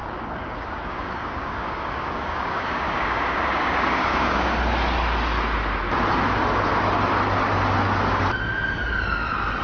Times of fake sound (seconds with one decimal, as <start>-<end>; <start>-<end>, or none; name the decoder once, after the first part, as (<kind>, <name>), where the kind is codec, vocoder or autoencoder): 0.0-4.6 (codec, DAC)